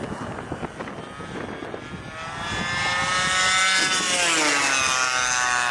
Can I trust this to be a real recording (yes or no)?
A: yes